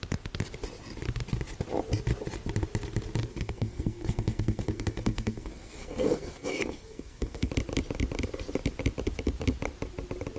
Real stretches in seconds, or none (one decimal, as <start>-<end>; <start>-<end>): 0.0-3.2; 7.5-10.4